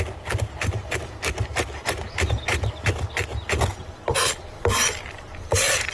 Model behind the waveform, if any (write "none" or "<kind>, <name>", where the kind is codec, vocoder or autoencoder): none